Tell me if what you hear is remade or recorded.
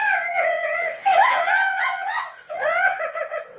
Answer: remade